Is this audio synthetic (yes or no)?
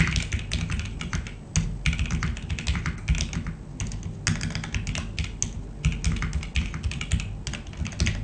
no